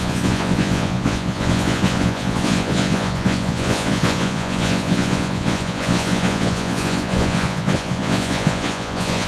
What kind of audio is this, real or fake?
fake